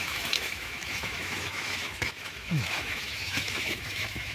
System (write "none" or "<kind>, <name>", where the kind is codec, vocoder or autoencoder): autoencoder, DAC-VAE